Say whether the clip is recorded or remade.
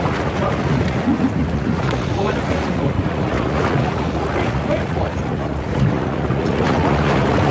remade